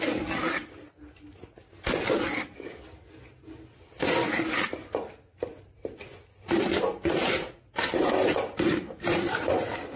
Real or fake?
real